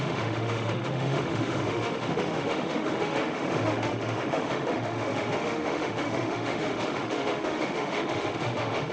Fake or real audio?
fake